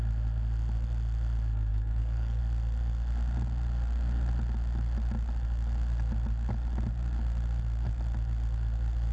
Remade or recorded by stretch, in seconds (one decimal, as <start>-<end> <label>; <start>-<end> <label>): 0.0-1.7 recorded; 1.7-2.4 remade; 2.4-9.1 recorded